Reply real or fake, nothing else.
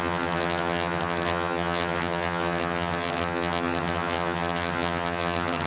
fake